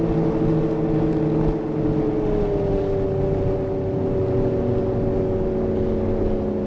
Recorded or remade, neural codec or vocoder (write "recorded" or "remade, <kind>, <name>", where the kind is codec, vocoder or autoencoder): recorded